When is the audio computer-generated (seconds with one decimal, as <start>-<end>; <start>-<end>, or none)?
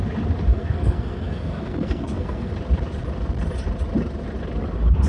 0.5-2.5